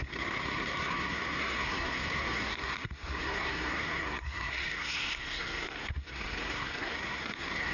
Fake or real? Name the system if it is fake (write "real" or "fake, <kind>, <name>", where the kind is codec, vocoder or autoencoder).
fake, codec, SNAC